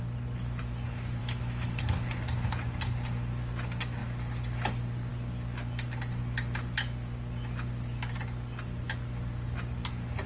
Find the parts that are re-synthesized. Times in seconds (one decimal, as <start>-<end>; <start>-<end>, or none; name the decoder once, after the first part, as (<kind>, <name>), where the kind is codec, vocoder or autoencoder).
1.2-1.8 (autoencoder, DAC-VAE)

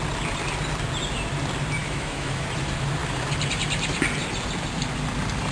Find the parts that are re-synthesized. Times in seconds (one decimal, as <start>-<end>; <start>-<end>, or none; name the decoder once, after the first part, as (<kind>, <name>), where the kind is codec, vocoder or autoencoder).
1.8-2.4 (autoencoder, DAC-VAE)